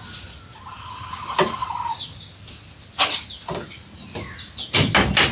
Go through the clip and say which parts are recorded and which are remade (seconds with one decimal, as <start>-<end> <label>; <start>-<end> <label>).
0.0-5.3 recorded